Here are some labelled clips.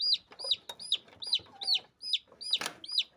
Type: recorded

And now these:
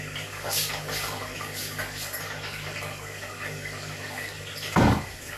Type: remade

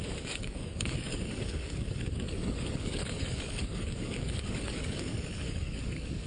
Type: remade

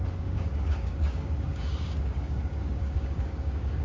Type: remade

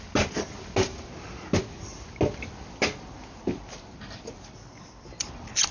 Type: recorded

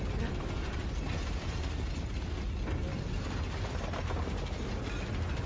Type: recorded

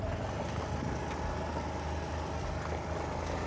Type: recorded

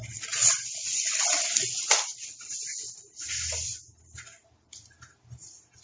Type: recorded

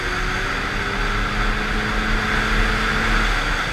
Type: recorded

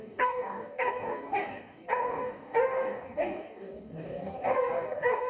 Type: remade